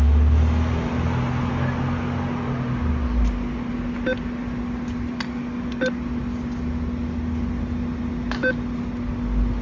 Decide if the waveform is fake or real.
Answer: real